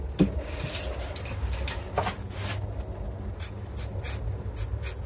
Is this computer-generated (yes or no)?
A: no